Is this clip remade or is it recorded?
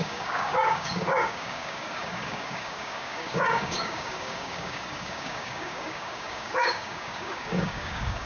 remade